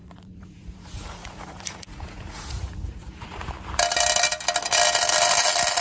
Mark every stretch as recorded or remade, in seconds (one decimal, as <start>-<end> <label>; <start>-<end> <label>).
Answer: 0.0-3.5 remade; 3.5-5.8 recorded

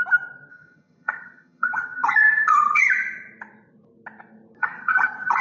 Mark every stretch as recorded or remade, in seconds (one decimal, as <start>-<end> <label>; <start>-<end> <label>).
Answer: 0.0-0.5 recorded; 0.5-2.8 remade; 2.8-4.6 recorded; 4.6-5.4 remade

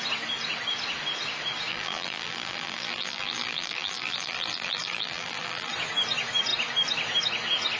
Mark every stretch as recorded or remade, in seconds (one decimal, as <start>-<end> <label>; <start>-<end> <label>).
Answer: 0.0-1.7 recorded; 1.7-5.7 remade; 5.7-7.8 recorded

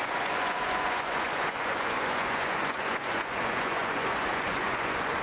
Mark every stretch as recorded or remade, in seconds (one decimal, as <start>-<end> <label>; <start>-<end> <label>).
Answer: 0.0-5.2 remade

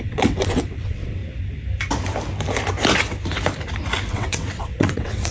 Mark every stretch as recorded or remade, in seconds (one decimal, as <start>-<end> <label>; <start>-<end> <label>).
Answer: 0.0-1.2 remade; 1.2-4.1 recorded; 4.1-5.3 remade

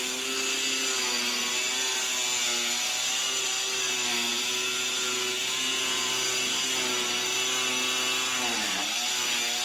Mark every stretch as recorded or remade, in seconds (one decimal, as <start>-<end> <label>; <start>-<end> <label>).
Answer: 0.0-4.3 recorded; 4.3-6.1 remade; 6.1-9.6 recorded

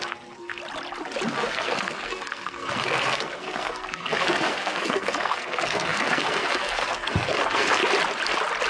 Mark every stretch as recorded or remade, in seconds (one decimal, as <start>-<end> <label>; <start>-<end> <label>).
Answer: 0.0-0.6 remade; 0.6-1.3 recorded; 1.3-7.8 remade; 7.8-8.7 recorded